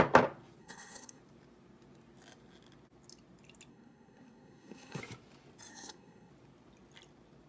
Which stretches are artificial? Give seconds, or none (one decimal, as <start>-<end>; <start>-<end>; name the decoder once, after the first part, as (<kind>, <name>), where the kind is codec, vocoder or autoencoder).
0.6-1.2 (codec, SNAC); 3.7-5.0; 5.7-6.3